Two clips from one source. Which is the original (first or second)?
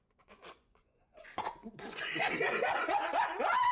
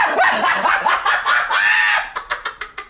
second